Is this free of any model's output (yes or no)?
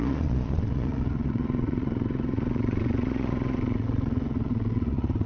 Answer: no